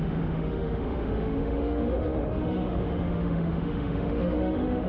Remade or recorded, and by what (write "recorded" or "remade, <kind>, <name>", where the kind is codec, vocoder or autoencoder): remade, autoencoder, DAC-VAE